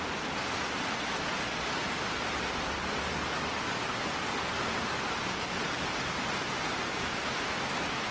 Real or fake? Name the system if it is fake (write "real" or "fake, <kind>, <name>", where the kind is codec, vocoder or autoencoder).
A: real